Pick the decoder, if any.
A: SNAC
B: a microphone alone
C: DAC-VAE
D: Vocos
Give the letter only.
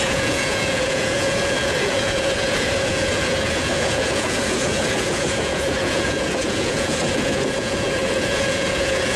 D